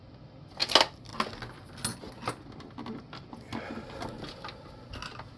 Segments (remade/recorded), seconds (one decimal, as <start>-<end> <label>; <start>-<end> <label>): 0.0-5.4 recorded